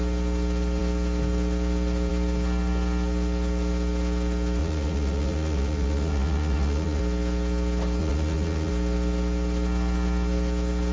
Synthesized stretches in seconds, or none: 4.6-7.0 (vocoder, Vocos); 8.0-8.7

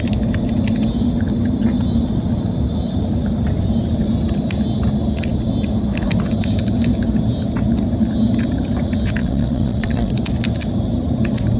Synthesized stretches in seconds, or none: 9.2-10.1 (vocoder, Vocos)

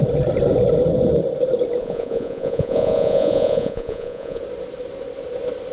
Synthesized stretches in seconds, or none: 1.8-4.4 (vocoder, Vocos)

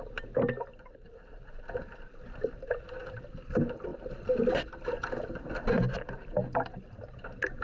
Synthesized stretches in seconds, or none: none

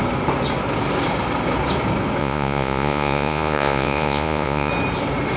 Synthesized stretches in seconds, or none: 2.2-4.7 (vocoder, Vocos)